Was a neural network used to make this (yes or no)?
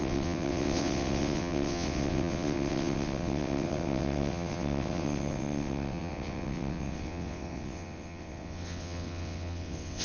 yes